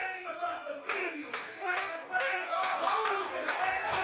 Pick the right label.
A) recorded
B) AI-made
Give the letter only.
B